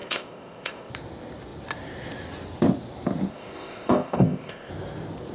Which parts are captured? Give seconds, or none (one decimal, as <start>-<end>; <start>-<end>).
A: 0.9-3.3; 4.7-5.3